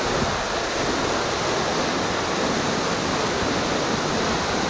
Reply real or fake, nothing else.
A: real